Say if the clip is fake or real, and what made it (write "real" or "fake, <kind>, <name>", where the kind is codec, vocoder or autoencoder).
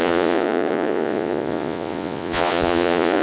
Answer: fake, vocoder, Vocos